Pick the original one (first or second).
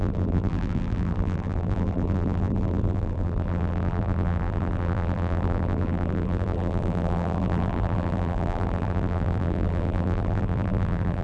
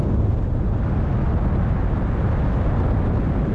second